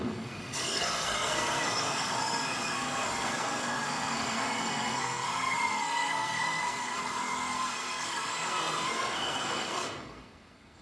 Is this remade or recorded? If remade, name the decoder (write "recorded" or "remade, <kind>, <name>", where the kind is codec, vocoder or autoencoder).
remade, codec, SNAC